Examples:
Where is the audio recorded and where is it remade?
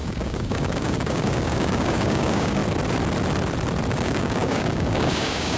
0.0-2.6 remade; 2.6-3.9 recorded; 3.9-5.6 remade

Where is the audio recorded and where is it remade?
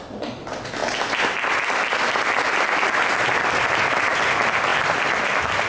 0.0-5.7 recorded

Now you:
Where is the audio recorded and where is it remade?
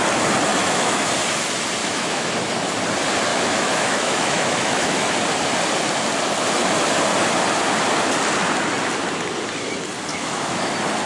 0.0-0.5 recorded; 0.5-1.1 remade; 1.1-1.8 recorded; 1.8-2.3 remade; 2.3-3.3 recorded; 3.3-5.1 remade; 5.1-10.1 recorded; 10.1-10.7 remade; 10.7-11.1 recorded